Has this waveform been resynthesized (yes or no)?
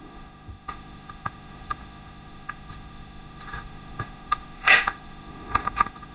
yes